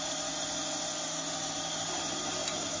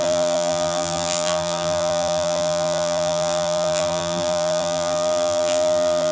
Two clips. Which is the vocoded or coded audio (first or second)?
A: second